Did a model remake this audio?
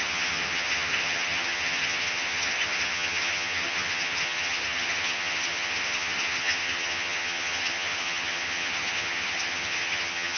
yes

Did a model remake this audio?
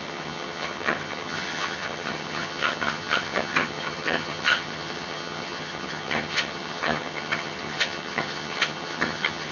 yes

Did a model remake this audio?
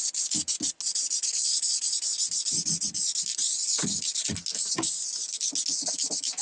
no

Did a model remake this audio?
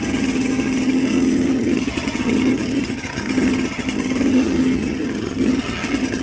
yes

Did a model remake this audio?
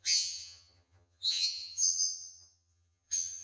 yes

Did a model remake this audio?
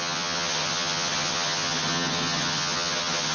yes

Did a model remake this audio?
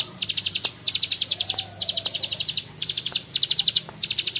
no